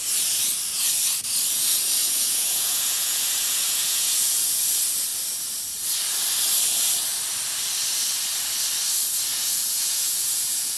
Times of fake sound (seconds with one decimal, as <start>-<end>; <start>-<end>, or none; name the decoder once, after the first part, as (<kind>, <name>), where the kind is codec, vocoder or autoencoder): 2.0-4.6 (vocoder, Vocos); 9.3-10.8

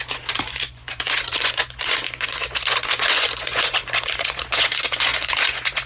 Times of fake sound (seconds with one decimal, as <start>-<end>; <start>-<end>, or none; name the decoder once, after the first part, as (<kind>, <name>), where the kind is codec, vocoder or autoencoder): 0.0-5.9 (vocoder, Vocos)